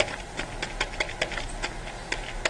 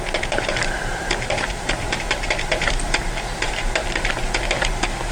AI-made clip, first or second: second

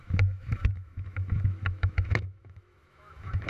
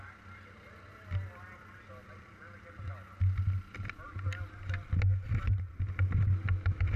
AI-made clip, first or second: first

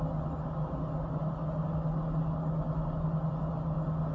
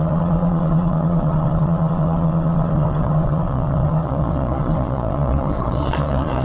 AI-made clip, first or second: second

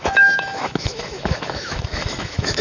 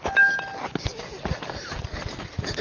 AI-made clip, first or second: first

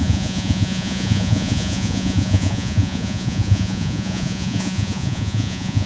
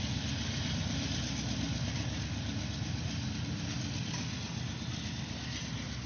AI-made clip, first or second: first